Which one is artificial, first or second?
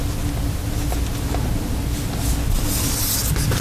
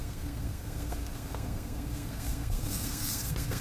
second